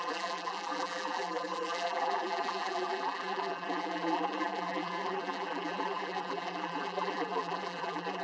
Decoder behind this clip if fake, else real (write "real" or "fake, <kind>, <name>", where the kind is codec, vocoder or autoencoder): fake, vocoder, BigVGAN v2